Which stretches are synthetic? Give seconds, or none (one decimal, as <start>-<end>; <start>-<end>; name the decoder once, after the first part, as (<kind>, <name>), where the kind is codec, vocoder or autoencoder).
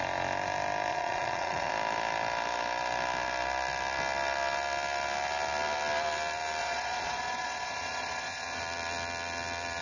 0.9-1.7 (vocoder, Vocos); 6.6-8.6